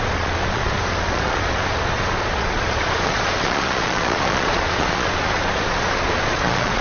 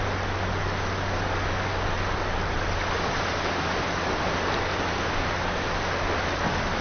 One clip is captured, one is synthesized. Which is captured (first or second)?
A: second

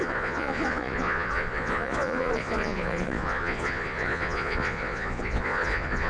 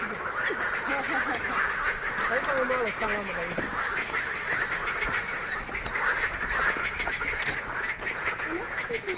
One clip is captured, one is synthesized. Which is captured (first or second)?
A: second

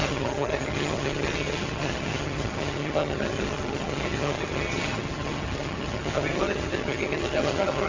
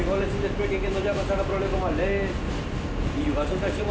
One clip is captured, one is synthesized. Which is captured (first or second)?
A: second